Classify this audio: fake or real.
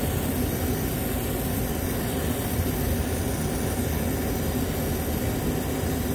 real